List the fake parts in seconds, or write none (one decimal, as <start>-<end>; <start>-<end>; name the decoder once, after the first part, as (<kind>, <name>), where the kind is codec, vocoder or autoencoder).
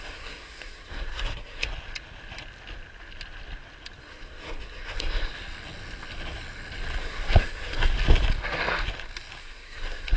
0.0-1.7 (codec, SNAC); 4.0-5.3; 7.0-7.9; 9.4-10.2